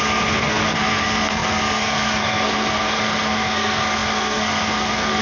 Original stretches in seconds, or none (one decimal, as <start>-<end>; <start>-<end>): none